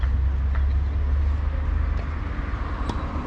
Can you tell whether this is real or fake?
real